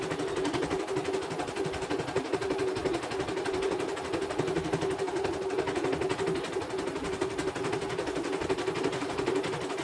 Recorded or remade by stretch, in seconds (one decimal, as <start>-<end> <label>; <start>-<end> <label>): 0.0-9.8 recorded